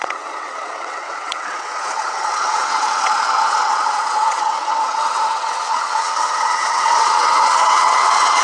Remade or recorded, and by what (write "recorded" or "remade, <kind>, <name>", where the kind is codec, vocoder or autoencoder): remade, vocoder, WaveNeXt